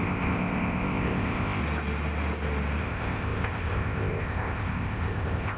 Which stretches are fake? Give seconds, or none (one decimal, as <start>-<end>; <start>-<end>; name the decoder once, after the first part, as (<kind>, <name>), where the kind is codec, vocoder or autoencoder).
0.0-1.6 (codec, ZipCodec); 2.8-5.6